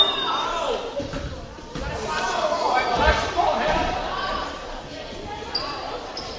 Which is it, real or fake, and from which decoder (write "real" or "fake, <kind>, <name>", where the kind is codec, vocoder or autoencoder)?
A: fake, vocoder, BigVGAN v2